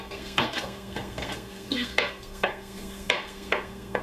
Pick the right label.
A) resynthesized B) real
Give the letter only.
A